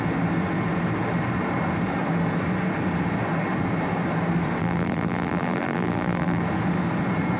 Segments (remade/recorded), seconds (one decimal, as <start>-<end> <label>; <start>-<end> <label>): 0.0-4.6 recorded; 4.6-6.4 remade; 6.4-7.4 recorded